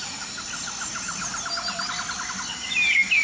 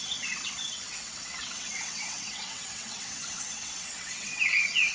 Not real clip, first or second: second